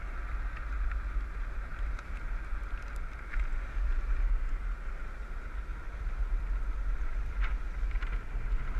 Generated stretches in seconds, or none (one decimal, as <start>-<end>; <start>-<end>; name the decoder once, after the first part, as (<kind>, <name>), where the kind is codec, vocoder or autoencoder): 1.7-3.3 (vocoder, BigVGAN v2); 5.7-7.9